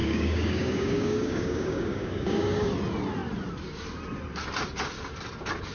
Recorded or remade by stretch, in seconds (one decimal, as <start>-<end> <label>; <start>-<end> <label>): 0.0-2.7 remade; 2.7-5.7 recorded